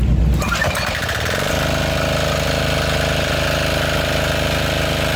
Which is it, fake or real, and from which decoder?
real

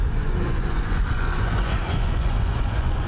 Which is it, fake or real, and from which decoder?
fake, vocoder, Vocos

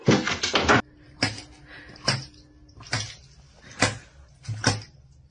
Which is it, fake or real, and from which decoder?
real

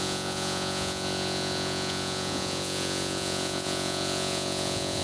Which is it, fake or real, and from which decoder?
fake, vocoder, Vocos